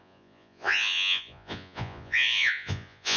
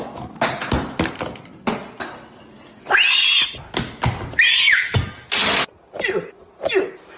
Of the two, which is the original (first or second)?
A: second